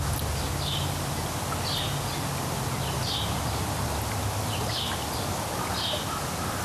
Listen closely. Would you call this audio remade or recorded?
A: recorded